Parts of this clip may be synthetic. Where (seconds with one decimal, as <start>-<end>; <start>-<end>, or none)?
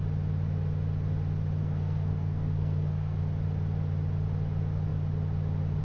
1.6-3.2